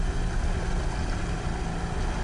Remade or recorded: recorded